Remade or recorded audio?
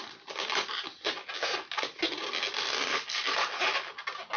recorded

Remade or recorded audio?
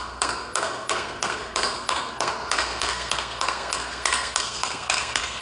remade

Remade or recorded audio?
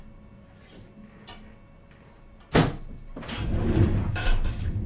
recorded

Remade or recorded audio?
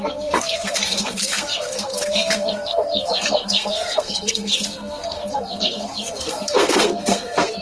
remade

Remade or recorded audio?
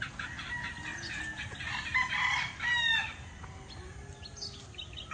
recorded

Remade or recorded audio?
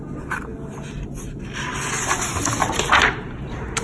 recorded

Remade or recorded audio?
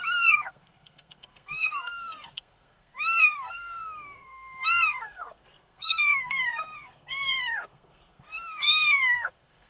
remade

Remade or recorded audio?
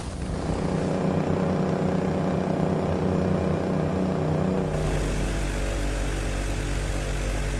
recorded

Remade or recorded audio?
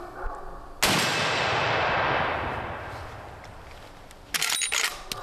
recorded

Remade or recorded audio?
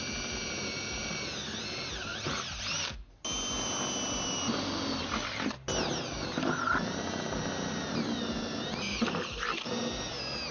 recorded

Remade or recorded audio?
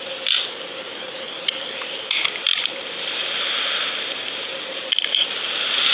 recorded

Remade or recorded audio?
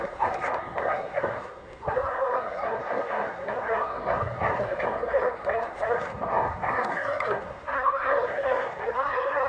remade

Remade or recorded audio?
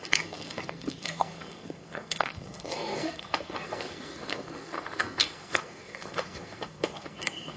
remade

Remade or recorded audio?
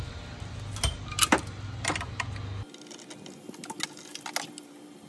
recorded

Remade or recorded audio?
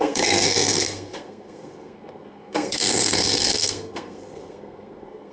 remade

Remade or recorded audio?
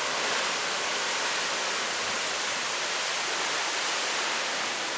recorded